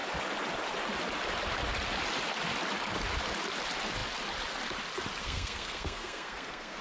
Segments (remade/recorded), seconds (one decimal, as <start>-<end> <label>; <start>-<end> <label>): 0.0-5.2 recorded; 5.2-6.8 remade